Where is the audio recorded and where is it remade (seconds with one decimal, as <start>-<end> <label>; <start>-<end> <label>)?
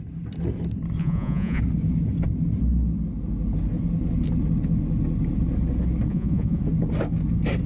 0.0-1.0 recorded; 1.0-1.6 remade; 1.6-6.1 recorded; 6.1-6.6 remade; 6.6-7.7 recorded